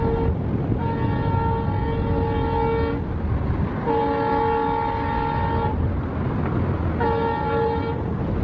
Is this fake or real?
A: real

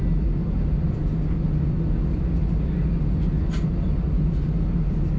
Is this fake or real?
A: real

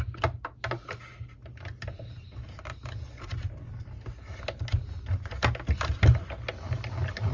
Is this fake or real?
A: real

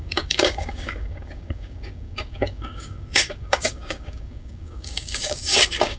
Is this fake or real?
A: fake